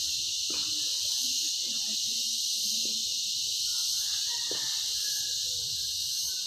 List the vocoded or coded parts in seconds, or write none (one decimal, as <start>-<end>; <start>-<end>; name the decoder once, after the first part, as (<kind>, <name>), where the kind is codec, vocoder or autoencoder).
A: none